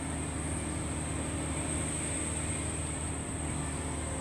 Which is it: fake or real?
real